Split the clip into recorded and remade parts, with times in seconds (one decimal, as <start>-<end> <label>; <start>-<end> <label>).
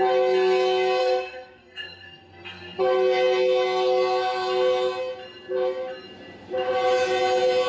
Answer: 0.0-1.0 recorded; 1.0-2.8 remade; 2.8-7.7 recorded